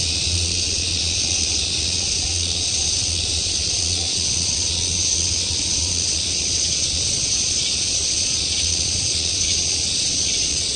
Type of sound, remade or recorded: remade